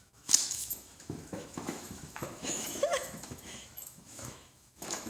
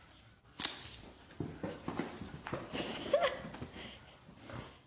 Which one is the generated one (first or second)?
first